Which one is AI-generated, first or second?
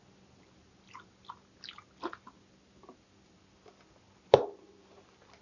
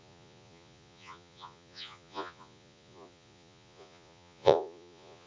second